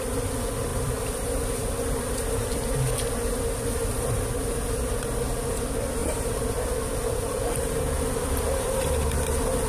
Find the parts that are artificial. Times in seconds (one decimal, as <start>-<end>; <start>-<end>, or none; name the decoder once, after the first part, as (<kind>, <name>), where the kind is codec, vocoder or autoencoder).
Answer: 0.7-1.4 (vocoder, BigVGAN v2); 6.0-6.5; 6.9-8.8